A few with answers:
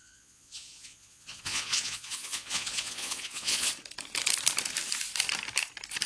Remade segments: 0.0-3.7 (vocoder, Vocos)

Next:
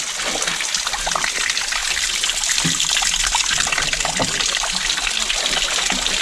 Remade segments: none

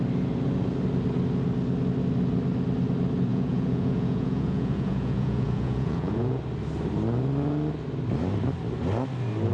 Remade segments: 3.3-6.4 (vocoder, Vocos)

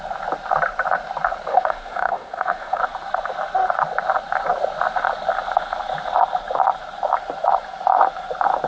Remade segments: 1.5-2.8 (autoencoder, DAC-VAE)